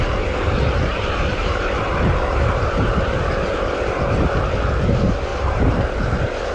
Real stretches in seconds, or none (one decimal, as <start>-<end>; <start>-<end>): 0.0-0.9; 3.7-5.3; 6.0-6.5